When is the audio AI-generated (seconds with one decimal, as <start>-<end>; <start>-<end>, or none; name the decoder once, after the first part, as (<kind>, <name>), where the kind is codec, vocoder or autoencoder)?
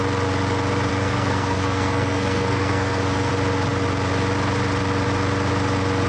0.9-3.3 (codec, SNAC)